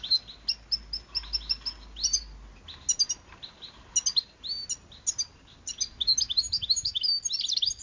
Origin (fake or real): real